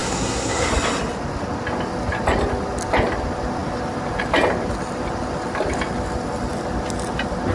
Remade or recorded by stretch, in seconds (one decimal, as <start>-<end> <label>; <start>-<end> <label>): 0.0-0.7 remade; 0.7-7.5 recorded

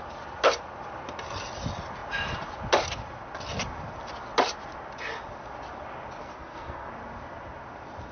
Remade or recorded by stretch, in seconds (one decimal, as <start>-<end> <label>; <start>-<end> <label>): 0.0-6.2 recorded; 6.2-6.9 remade; 6.9-8.1 recorded

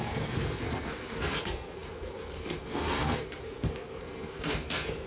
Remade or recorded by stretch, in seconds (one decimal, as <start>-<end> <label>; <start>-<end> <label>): 0.0-5.1 remade

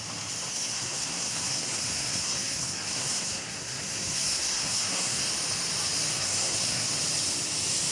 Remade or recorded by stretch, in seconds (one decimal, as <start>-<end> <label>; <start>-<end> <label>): 0.0-0.5 recorded; 0.5-5.2 remade; 5.2-6.1 recorded; 6.1-6.9 remade; 6.9-7.9 recorded

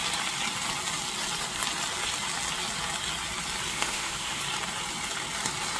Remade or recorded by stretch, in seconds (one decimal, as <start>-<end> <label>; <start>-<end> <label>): 0.0-3.7 recorded; 3.7-4.4 remade; 4.4-5.8 recorded

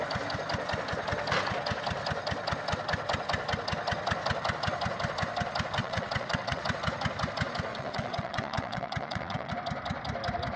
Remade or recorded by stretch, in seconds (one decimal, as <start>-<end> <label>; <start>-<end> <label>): 0.0-5.8 recorded; 5.8-6.6 remade; 6.6-7.7 recorded; 7.7-9.5 remade; 9.5-10.6 recorded